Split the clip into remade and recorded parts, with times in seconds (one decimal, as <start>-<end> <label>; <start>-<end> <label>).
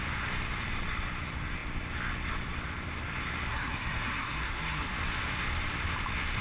0.0-3.5 recorded; 3.5-4.9 remade; 4.9-6.4 recorded